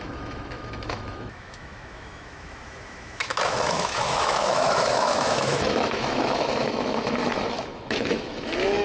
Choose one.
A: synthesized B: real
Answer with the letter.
A